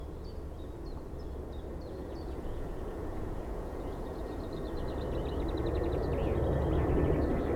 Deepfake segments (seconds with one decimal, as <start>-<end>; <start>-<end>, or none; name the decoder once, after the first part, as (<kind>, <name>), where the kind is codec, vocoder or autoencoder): 2.0-4.4 (vocoder, Vocos)